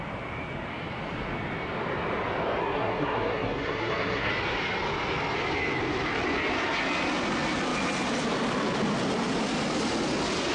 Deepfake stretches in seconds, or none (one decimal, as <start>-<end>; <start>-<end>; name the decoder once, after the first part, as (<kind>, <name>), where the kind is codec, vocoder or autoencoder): 2.6-4.3 (codec, SNAC)